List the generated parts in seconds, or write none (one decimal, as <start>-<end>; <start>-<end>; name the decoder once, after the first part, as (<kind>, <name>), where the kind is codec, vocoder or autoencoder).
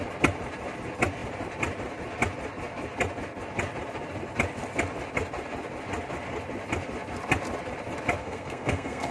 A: 8.2-9.1 (codec, SNAC)